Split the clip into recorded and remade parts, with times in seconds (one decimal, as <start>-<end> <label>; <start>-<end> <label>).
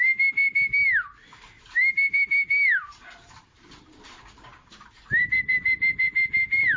0.0-0.4 remade; 0.4-1.4 recorded; 1.4-6.8 remade